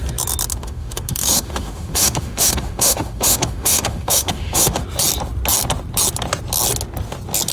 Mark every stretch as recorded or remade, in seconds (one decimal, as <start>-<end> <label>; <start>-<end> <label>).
0.0-0.5 recorded; 0.5-4.8 remade; 4.8-7.5 recorded